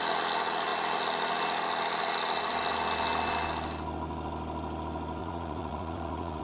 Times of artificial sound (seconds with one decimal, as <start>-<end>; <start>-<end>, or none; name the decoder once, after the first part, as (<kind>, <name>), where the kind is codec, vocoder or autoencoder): 5.2-6.4 (vocoder, Vocos)